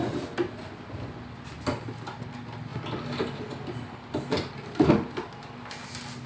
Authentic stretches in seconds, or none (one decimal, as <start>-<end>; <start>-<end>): 0.0-6.3